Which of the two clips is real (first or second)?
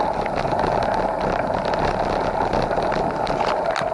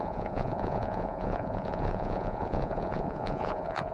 first